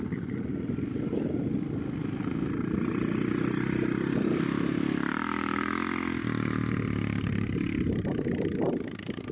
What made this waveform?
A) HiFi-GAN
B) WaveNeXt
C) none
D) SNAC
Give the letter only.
C